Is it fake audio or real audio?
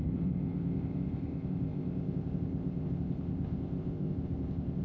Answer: fake